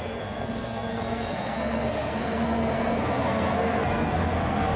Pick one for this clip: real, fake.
fake